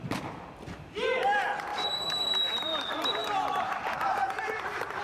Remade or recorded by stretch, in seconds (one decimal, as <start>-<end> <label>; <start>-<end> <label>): 0.0-1.7 recorded; 1.7-5.0 remade